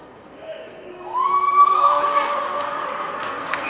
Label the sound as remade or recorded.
remade